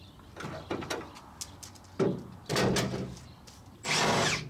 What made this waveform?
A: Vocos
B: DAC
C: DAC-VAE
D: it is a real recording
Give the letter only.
D